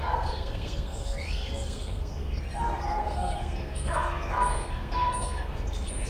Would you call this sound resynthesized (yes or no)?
yes